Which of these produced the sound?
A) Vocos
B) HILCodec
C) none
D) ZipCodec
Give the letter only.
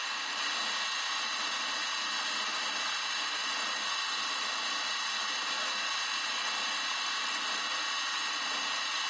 C